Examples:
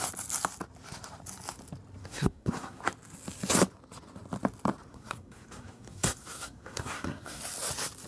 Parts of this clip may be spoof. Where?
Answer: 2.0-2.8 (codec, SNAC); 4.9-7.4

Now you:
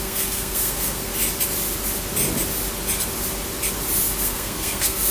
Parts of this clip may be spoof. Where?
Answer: 0.0-1.1 (codec, SNAC); 4.2-5.1

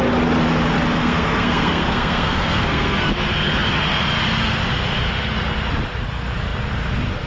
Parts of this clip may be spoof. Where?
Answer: 1.0-3.1 (codec, SNAC)